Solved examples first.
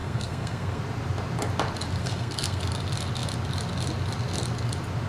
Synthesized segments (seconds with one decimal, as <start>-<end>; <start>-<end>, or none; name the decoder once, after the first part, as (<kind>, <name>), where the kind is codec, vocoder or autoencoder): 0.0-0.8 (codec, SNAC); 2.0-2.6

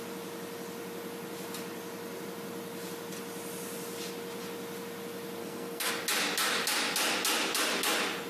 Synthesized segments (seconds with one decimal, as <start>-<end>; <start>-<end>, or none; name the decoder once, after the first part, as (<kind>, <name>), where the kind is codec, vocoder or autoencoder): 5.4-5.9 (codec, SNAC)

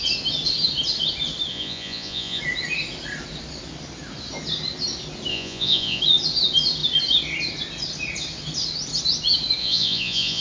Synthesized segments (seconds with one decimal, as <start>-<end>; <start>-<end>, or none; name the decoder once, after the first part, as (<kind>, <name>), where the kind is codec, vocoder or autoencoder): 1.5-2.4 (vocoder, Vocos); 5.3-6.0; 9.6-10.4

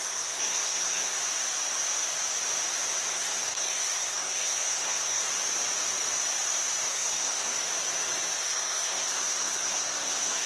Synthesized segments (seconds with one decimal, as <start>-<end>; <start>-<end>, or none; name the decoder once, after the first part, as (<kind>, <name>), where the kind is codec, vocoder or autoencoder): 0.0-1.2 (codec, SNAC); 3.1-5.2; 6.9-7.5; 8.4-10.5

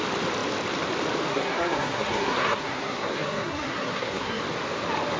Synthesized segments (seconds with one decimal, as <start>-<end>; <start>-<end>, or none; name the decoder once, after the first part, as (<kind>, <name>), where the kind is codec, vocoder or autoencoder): 1.3-4.4 (codec, SNAC)